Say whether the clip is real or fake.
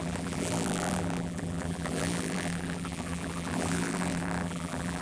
fake